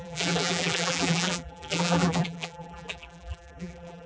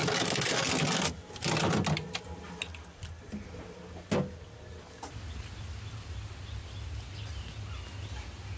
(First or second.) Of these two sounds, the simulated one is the first